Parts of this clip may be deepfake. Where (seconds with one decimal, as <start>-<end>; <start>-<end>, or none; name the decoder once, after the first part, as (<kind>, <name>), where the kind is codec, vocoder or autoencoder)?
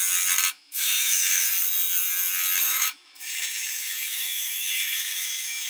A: 0.5-1.5 (autoencoder, DAC-VAE); 2.6-5.7